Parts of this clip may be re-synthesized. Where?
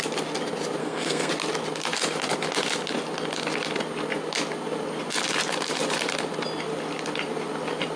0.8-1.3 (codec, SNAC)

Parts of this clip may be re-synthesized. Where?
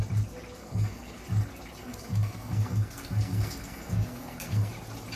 0.6-1.2 (codec, SNAC); 1.8-4.7